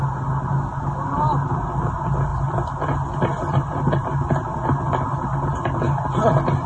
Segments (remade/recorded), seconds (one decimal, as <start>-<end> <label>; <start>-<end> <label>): 0.0-6.7 recorded